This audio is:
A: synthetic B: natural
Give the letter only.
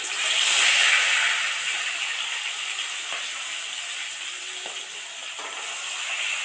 B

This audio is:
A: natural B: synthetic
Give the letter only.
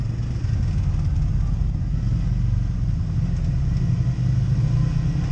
A